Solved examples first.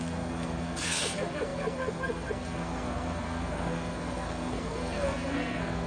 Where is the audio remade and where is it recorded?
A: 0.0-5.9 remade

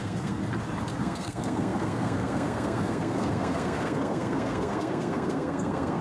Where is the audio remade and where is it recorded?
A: 0.0-0.4 remade; 0.4-1.0 recorded; 1.0-6.0 remade

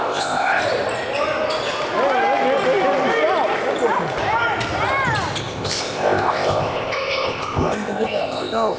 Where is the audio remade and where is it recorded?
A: 0.0-0.6 remade; 0.6-5.4 recorded; 5.4-8.8 remade

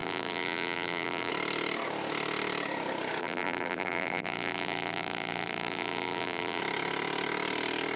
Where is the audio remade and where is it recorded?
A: 0.0-1.3 remade; 1.3-3.2 recorded; 3.2-6.6 remade; 6.6-8.0 recorded

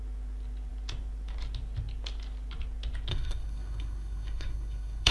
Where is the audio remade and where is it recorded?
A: 0.0-3.1 recorded; 3.1-5.1 remade

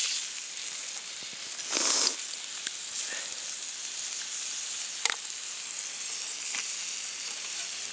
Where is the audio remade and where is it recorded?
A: 0.0-7.9 recorded